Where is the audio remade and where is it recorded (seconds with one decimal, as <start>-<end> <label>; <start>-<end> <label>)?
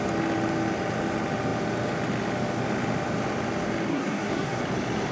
0.0-3.9 recorded; 3.9-4.6 remade; 4.6-5.1 recorded